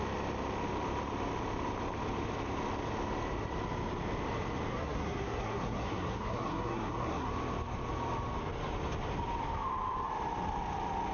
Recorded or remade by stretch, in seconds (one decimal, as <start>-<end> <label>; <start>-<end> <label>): 0.0-4.7 recorded; 4.7-7.3 remade; 7.3-11.1 recorded